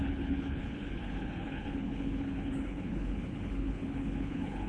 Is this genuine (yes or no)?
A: no